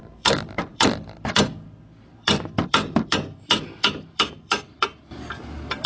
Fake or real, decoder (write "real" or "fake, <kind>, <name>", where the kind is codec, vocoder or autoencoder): fake, vocoder, BigVGAN v2